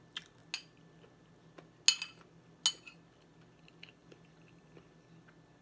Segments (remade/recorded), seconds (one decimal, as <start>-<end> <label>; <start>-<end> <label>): 0.0-4.0 recorded; 4.0-4.9 remade; 4.9-5.6 recorded